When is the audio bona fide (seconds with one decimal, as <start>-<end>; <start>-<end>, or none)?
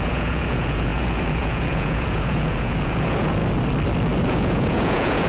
3.4-4.2